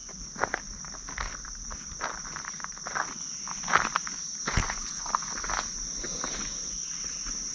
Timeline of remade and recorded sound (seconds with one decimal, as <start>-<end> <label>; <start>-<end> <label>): 0.0-4.4 recorded; 4.4-5.0 remade; 5.0-7.5 recorded